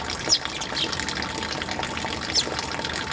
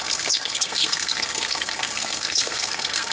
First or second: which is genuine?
first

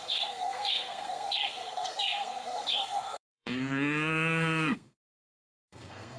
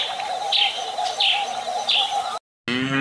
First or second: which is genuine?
second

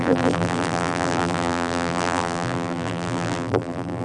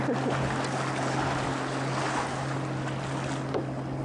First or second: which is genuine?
second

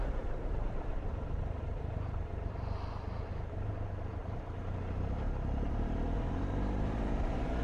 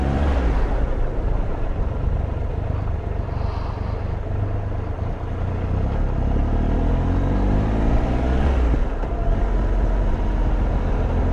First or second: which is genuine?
second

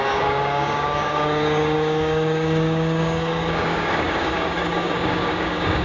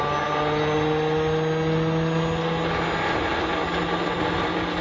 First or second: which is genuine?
second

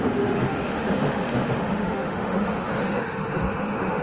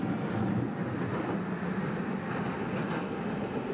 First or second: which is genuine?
second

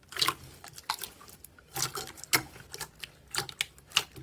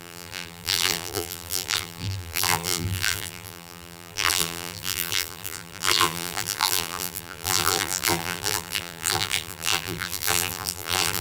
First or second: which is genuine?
first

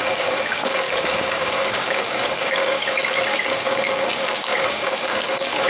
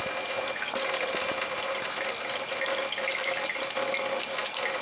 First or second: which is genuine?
second